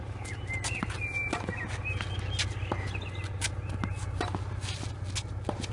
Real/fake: real